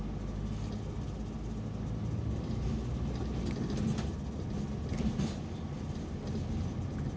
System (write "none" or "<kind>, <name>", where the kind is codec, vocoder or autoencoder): none